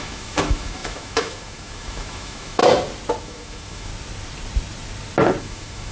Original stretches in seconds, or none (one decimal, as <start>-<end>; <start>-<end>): 2.6-3.2; 3.9-5.4